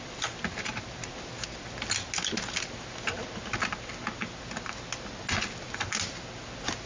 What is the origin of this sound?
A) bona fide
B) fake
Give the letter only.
A